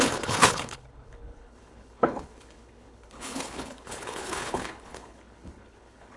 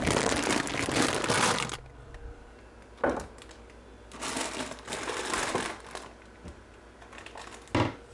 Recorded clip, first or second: second